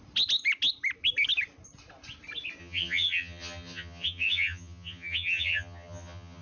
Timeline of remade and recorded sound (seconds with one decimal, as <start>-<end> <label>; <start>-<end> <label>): 0.0-2.6 recorded; 2.6-6.4 remade